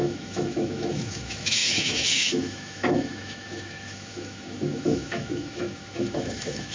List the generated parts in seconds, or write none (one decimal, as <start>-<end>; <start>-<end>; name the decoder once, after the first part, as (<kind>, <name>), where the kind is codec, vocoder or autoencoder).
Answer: 0.0-6.7 (autoencoder, DAC-VAE)